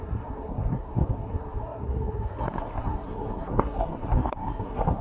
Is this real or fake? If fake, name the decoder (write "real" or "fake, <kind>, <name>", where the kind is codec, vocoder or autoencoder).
fake, codec, SNAC